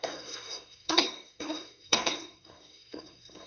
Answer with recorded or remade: remade